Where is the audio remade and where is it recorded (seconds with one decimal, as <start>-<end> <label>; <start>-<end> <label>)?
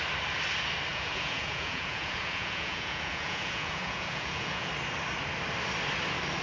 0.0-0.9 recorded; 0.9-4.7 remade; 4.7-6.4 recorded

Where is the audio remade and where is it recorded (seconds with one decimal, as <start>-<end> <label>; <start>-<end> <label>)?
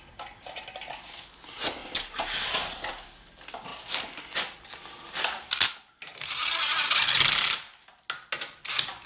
0.0-9.1 recorded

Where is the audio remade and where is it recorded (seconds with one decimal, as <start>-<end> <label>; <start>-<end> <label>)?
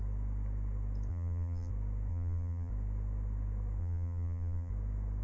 0.0-1.1 recorded; 1.1-1.7 remade; 1.7-2.1 recorded; 2.1-2.7 remade; 2.7-3.8 recorded; 3.8-4.7 remade; 4.7-5.2 recorded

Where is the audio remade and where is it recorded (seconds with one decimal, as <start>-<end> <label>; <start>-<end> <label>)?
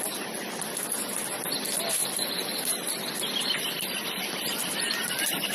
0.0-2.0 recorded; 2.0-3.0 remade; 3.0-5.5 recorded